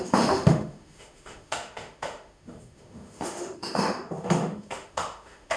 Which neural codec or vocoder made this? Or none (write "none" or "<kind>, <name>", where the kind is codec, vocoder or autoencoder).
autoencoder, DAC-VAE